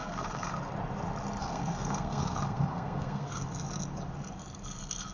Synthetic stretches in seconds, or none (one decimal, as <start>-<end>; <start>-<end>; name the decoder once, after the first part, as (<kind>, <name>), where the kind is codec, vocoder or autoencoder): 0.0-0.5 (codec, SNAC); 1.4-3.4

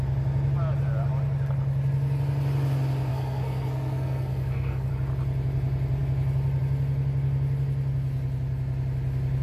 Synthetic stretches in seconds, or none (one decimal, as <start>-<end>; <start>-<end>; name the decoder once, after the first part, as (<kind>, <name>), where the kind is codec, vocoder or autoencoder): 3.1-4.9 (codec, SNAC)

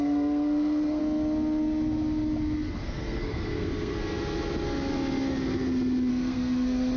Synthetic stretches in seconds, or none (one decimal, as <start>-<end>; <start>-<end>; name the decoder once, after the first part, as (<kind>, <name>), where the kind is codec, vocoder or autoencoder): 0.0-1.0 (codec, SNAC); 2.8-3.9; 6.1-7.0